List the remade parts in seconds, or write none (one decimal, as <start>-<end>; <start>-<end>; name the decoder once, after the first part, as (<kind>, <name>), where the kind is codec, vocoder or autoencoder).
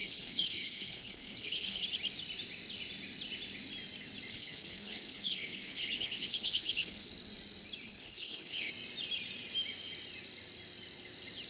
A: 0.0-1.8 (codec, HILCodec); 4.3-7.1; 7.8-8.7